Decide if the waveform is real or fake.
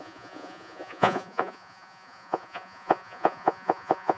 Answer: fake